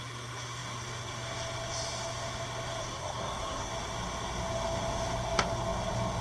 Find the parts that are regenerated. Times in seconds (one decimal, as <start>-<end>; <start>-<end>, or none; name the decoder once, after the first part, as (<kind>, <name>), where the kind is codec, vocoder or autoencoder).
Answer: 2.8-3.7 (codec, SNAC)